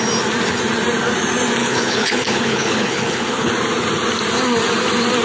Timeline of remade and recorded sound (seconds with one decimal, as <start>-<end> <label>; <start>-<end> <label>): 0.0-1.6 recorded; 1.6-3.5 remade; 3.5-5.2 recorded